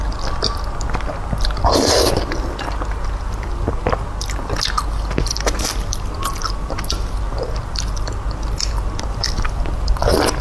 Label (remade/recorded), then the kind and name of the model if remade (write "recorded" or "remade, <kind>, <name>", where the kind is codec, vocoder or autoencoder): recorded